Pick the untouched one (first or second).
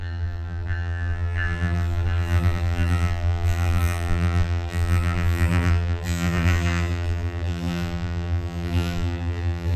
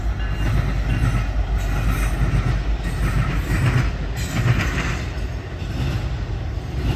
second